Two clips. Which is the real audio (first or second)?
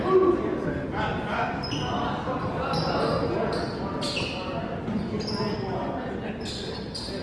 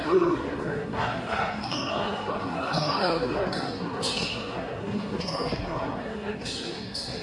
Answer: first